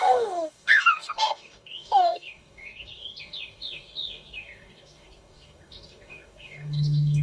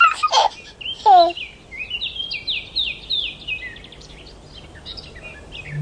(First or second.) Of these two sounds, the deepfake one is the first